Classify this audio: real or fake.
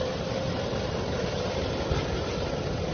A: real